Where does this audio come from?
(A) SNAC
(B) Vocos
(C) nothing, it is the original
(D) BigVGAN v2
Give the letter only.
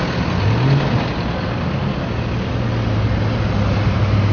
C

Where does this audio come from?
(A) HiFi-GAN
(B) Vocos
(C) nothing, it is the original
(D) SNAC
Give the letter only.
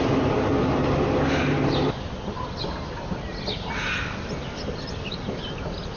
C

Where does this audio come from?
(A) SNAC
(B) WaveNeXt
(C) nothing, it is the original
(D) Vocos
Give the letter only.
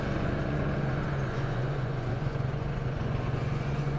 D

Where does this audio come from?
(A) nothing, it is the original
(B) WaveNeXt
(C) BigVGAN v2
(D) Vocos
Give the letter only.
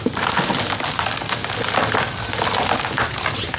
A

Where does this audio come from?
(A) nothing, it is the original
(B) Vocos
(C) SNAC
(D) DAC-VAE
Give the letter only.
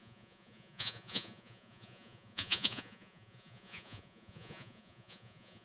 B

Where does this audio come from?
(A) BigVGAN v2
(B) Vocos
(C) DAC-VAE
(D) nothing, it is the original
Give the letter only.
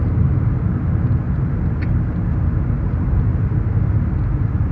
D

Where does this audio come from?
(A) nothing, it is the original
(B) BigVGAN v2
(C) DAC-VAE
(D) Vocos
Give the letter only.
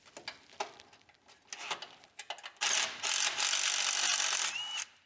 A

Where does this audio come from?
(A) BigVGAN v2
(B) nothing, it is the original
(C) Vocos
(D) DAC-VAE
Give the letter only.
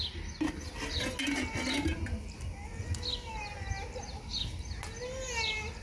B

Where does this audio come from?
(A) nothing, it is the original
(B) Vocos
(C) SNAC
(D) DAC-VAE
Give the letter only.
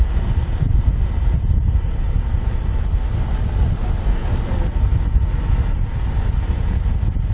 A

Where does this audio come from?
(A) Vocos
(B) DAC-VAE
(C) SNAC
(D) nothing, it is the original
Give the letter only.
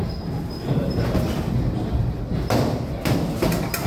D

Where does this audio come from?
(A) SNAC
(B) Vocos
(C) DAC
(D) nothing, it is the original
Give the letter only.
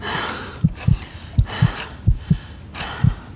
D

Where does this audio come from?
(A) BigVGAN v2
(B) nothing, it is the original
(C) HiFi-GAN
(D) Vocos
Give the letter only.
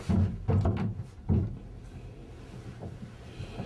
B